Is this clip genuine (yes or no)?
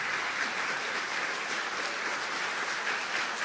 yes